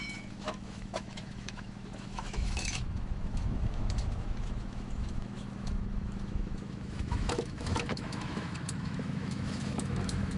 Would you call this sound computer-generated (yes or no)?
yes